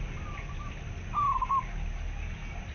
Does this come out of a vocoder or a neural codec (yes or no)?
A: no